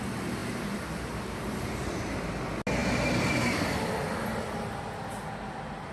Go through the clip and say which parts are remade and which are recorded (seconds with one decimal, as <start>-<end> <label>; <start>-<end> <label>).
0.0-5.9 recorded